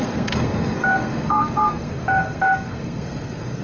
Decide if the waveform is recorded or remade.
remade